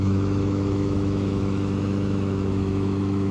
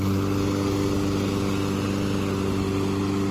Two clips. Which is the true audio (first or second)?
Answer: second